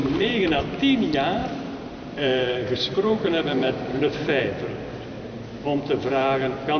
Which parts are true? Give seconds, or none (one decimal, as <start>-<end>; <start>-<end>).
0.6-1.4; 4.4-6.8